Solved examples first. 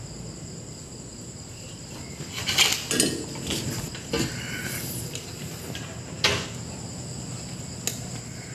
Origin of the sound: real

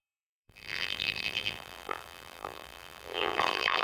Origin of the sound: fake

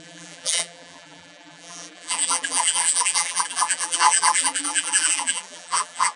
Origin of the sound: fake